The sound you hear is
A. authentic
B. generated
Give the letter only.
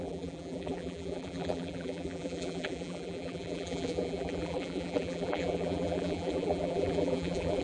B